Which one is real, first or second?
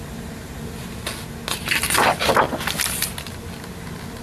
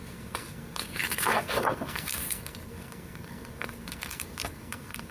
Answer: first